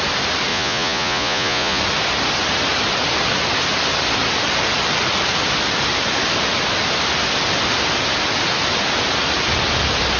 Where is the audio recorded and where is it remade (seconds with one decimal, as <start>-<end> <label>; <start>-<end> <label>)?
0.0-0.5 recorded; 0.5-1.8 remade; 1.8-10.2 recorded